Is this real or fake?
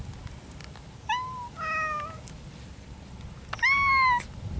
real